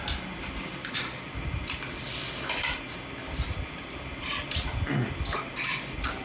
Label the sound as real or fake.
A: fake